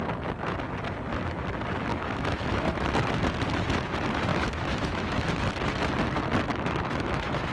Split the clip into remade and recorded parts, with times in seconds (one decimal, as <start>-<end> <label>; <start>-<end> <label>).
0.0-1.9 recorded; 1.9-2.9 remade; 2.9-4.3 recorded; 4.3-5.4 remade; 5.4-6.5 recorded; 6.5-7.5 remade